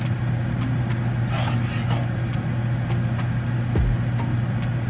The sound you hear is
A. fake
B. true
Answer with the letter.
B